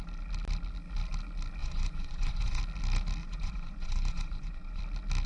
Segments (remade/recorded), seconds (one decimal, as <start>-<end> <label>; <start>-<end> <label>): 0.0-1.6 recorded; 1.6-2.6 remade; 2.6-3.2 recorded; 3.2-4.8 remade; 4.8-5.3 recorded